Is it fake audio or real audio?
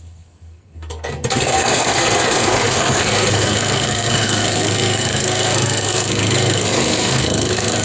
fake